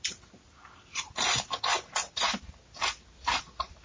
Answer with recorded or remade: recorded